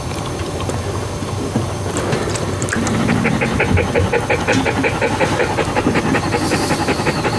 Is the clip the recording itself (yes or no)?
yes